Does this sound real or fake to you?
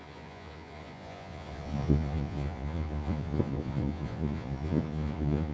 fake